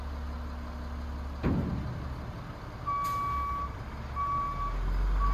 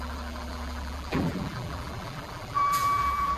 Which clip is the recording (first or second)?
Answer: first